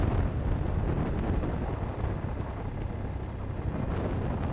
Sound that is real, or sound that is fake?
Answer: real